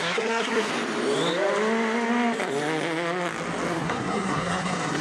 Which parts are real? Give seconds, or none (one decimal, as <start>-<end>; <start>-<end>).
0.7-3.7